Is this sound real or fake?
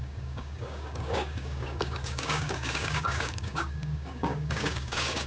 fake